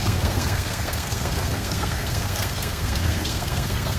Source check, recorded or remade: remade